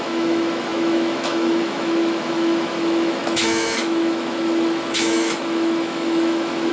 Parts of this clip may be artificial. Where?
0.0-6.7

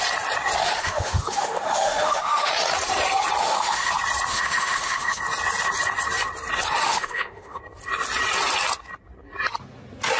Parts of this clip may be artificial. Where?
0.6-2.5; 3.4-3.9; 4.3-5.2; 6.8-7.6

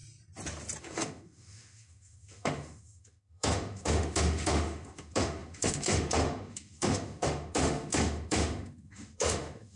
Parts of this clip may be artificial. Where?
0.8-9.8